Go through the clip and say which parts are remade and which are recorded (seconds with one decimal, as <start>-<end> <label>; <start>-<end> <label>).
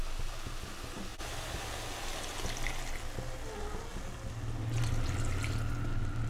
0.0-6.3 recorded